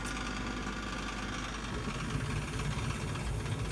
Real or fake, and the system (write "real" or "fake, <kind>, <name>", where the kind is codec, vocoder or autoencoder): real